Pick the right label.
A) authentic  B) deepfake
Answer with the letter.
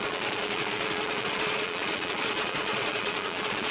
B